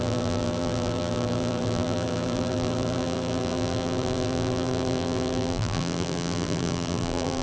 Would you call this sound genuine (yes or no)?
no